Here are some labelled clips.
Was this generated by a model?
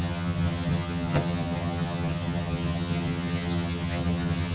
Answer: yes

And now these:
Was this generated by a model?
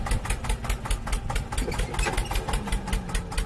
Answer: no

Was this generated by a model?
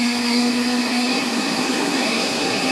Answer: yes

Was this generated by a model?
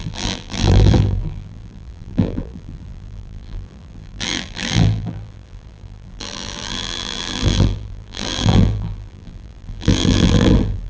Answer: yes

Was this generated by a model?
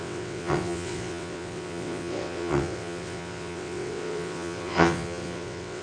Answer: yes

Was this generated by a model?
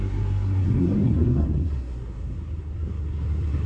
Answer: yes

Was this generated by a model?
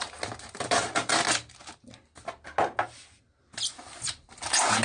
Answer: no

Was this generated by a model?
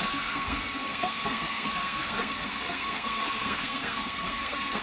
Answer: yes